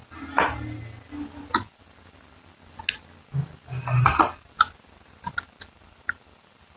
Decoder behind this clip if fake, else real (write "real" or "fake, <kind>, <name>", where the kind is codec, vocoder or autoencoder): real